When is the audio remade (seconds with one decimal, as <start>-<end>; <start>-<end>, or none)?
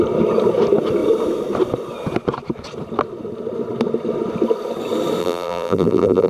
5.2-6.3